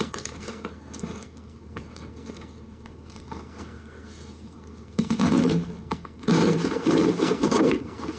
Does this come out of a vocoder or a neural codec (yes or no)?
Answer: yes